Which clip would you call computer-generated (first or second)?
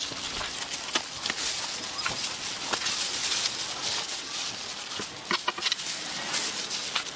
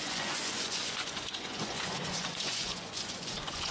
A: second